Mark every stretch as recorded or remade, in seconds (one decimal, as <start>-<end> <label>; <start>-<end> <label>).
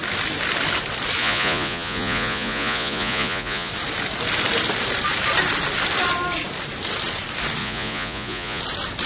0.0-1.2 recorded; 1.2-3.7 remade; 3.7-7.6 recorded; 7.6-8.6 remade; 8.6-9.1 recorded